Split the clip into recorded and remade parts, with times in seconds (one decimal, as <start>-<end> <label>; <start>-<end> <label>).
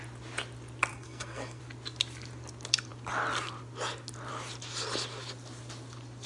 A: 0.0-0.9 recorded; 0.9-1.6 remade; 1.6-6.3 recorded